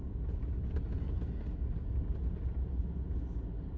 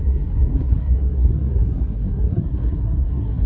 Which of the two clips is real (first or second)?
first